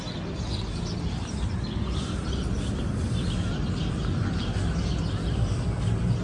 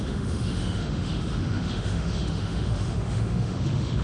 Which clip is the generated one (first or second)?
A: second